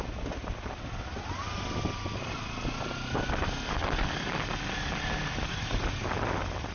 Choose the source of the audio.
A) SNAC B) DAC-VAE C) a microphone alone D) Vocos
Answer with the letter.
C